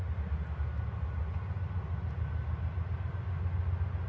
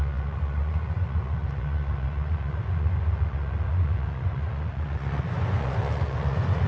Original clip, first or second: first